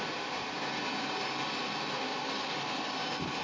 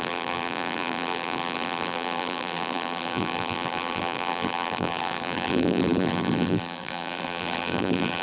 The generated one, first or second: second